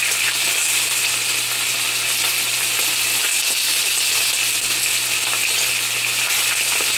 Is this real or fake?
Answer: real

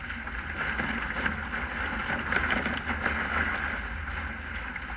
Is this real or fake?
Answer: real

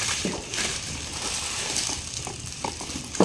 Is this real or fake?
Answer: fake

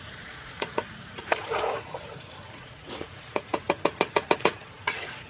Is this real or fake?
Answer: fake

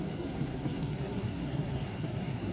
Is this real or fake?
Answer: fake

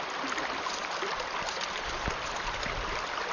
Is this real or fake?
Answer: real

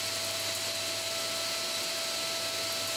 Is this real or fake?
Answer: real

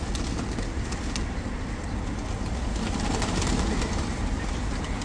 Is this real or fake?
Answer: real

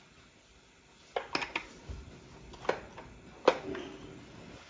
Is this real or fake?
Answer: real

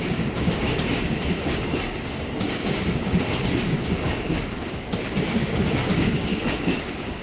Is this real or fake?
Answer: fake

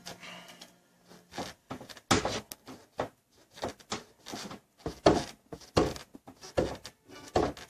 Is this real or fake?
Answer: real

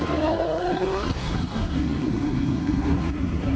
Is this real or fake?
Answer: fake